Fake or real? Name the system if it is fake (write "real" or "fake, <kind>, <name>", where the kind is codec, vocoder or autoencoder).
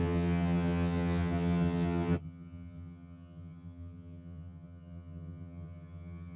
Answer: fake, vocoder, HiFi-GAN